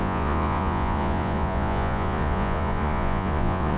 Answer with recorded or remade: remade